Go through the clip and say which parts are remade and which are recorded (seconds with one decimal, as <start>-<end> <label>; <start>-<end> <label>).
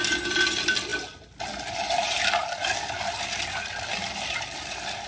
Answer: 0.0-5.1 recorded